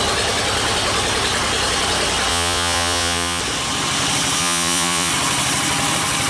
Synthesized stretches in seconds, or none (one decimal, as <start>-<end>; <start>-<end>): 2.3-3.4; 4.4-5.1